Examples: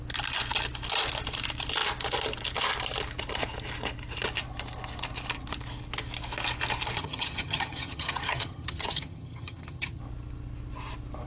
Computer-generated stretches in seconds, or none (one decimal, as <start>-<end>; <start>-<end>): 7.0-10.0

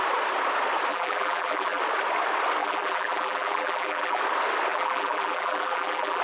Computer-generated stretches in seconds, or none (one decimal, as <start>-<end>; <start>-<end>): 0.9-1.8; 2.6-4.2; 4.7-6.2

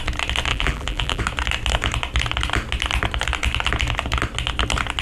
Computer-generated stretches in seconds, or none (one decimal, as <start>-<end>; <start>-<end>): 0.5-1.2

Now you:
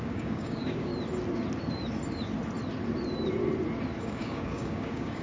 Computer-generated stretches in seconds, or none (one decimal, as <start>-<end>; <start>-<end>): 0.0-0.9; 4.0-5.2